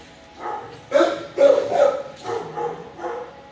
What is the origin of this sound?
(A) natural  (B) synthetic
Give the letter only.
A